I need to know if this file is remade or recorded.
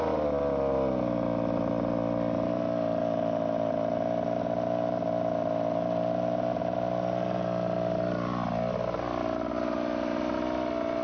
recorded